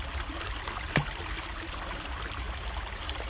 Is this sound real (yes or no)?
yes